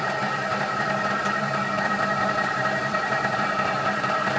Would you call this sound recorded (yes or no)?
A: no